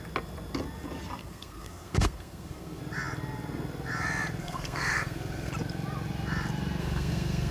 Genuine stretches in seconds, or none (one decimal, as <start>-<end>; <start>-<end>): 0.0-1.2; 2.8-4.4; 5.5-6.8